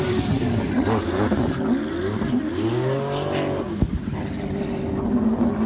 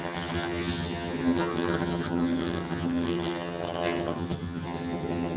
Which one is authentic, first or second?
first